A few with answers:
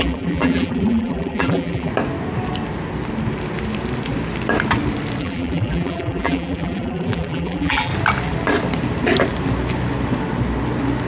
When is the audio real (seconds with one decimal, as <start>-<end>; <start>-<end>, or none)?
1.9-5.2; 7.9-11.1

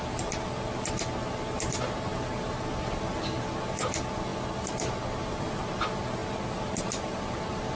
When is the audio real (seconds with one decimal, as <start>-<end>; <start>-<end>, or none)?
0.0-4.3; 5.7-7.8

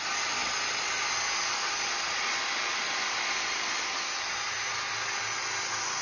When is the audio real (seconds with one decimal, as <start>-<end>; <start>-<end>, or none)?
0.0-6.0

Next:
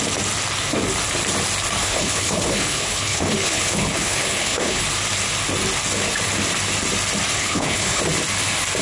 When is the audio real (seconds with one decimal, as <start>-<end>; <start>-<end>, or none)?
0.0-1.8; 4.8-7.3; 8.0-8.8

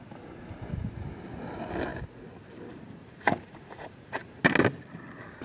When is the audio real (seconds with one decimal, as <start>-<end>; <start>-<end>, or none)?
0.0-3.0; 4.4-5.4

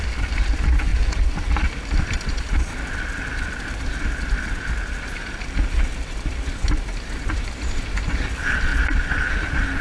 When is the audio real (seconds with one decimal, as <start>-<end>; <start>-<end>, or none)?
0.0-9.8

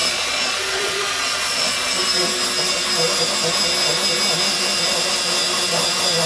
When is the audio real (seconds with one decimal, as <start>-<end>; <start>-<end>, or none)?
1.9-6.3

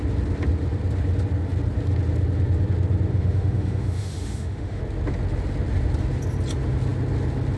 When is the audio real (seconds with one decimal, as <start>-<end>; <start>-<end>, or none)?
0.0-3.1; 4.8-7.6